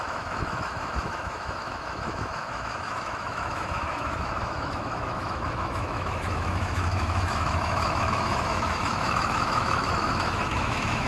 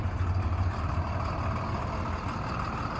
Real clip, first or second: second